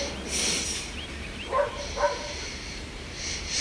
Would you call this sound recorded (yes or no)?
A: no